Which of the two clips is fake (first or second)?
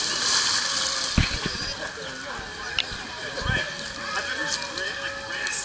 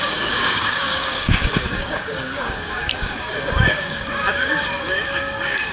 second